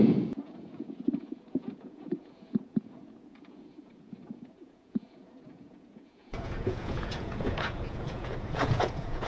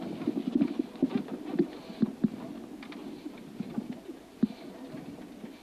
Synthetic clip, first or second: first